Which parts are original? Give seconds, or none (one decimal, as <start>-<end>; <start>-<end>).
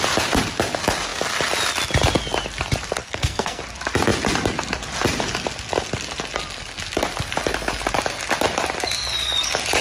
0.0-3.0; 3.6-9.8